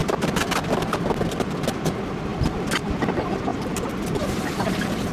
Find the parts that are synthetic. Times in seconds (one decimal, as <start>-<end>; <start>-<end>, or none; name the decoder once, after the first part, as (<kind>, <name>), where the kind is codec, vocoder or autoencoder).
0.0-1.0 (vocoder, BigVGAN v2); 2.3-3.0; 3.5-4.3